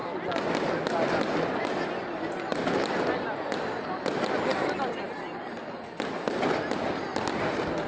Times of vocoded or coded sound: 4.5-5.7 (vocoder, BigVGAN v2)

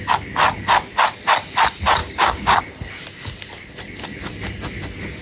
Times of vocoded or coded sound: 2.0-2.6 (codec, DAC)

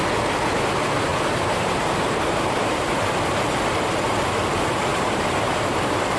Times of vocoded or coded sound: 1.1-3.2 (vocoder, BigVGAN v2); 4.9-6.2

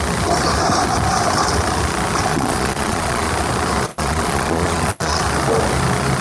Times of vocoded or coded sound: 2.3-3.3 (vocoder, Vocos); 3.9-5.2

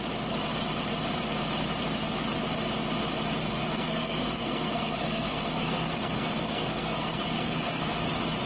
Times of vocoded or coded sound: 3.4-8.0 (codec, SNAC)

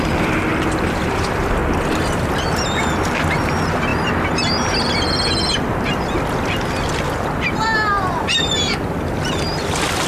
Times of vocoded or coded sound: none

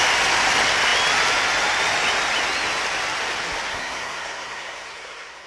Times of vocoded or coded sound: 3.7-5.5 (codec, SNAC)

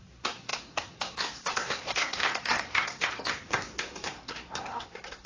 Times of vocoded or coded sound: 0.0-5.3 (codec, SNAC)